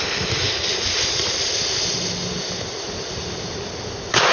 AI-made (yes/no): no